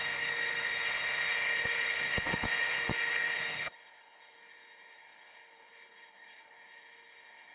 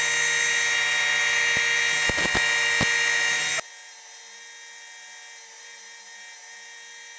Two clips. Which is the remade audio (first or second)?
first